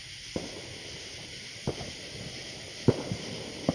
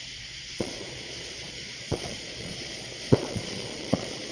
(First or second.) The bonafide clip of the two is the first